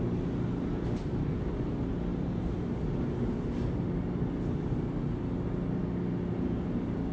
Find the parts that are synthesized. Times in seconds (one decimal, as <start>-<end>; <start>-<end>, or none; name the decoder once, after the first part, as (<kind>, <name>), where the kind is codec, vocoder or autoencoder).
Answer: none